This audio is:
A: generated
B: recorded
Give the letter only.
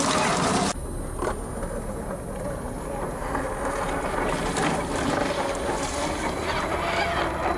B